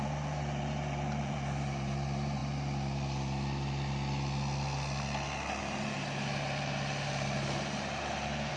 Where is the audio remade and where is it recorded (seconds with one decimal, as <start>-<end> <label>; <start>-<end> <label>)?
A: 0.0-2.4 remade; 2.4-5.6 recorded; 5.6-8.6 remade